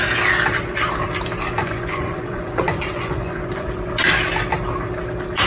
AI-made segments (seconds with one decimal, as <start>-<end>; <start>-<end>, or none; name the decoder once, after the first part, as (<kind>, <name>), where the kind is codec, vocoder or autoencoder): 1.6-3.7 (vocoder, Vocos)